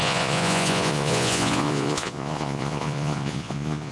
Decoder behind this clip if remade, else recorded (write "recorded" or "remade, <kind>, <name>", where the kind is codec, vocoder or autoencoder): remade, vocoder, Vocos